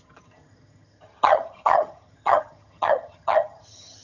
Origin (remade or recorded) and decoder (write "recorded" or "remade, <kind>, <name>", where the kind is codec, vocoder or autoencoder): remade, vocoder, HiFi-GAN